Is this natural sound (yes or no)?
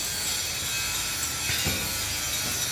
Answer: yes